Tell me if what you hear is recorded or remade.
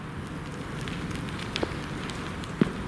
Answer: recorded